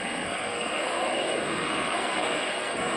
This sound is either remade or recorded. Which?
remade